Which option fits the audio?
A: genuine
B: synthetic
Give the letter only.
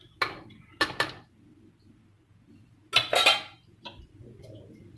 A